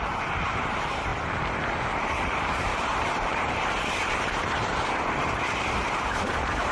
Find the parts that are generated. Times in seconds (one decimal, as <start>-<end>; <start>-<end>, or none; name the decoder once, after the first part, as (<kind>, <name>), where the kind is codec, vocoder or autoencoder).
0.0-1.1 (vocoder, BigVGAN v2); 2.1-4.7; 5.2-6.7